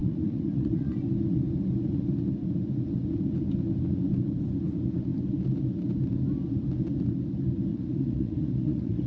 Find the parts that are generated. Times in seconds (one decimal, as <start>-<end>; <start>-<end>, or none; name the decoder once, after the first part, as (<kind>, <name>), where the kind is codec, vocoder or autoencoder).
0.0-1.0 (vocoder, Vocos); 7.7-9.1